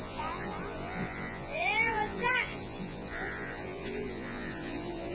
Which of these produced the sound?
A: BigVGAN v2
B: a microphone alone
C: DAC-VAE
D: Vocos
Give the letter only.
D